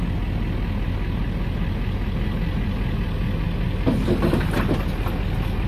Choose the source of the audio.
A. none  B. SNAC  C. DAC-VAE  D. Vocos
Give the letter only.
A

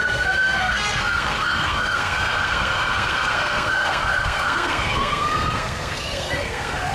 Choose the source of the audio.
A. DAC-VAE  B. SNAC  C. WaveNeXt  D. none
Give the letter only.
B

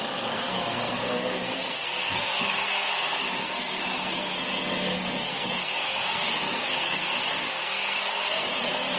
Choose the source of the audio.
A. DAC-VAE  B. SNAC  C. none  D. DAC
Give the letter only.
B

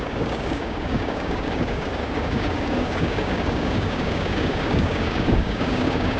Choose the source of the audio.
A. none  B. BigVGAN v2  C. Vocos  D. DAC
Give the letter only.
D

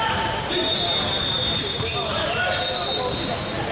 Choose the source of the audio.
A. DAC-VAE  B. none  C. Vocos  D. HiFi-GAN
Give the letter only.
B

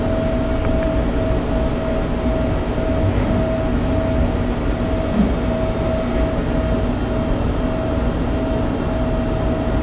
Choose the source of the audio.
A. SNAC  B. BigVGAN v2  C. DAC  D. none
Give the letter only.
D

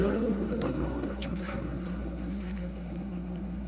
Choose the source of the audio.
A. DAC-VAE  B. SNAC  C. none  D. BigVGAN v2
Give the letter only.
B